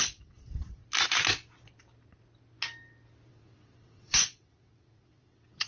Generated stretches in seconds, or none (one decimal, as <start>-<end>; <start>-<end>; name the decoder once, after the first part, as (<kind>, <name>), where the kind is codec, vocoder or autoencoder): 0.0-0.8 (vocoder, WaveNeXt); 3.3-5.7